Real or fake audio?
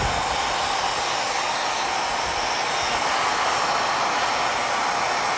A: real